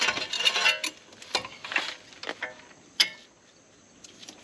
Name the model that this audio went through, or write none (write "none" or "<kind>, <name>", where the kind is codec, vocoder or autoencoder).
none